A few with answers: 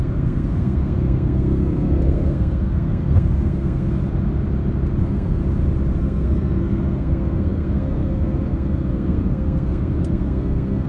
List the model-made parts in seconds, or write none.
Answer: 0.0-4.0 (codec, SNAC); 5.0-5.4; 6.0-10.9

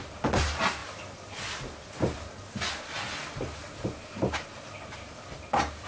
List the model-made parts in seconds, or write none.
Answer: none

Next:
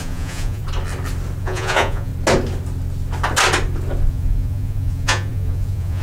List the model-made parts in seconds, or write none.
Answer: 0.0-0.6 (vocoder, Vocos); 1.4-2.1; 4.1-6.0

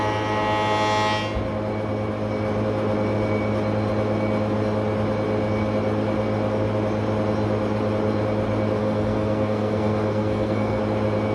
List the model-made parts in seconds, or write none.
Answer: 8.8-10.8 (codec, SNAC)

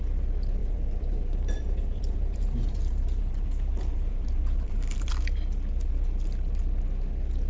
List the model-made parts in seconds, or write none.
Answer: 0.6-5.1 (vocoder, BigVGAN v2)

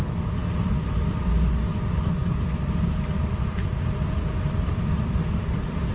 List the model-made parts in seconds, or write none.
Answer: 0.4-1.0 (vocoder, BigVGAN v2); 2.2-5.9

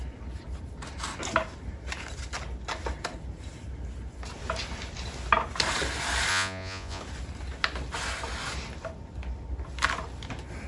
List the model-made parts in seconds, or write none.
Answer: 6.3-7.0 (vocoder, Vocos)

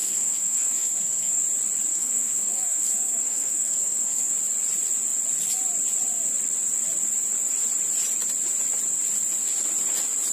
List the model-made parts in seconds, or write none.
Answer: 0.0-1.4 (codec, SNAC); 1.9-4.3